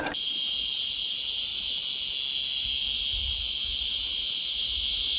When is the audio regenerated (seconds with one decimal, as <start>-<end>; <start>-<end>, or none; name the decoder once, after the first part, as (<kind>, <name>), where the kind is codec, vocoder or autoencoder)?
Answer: none